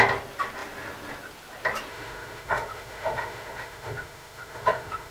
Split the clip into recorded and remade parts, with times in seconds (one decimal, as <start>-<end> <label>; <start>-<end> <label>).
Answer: 0.0-1.9 recorded; 1.9-5.1 remade